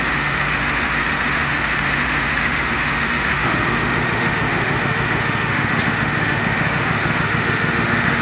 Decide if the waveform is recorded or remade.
remade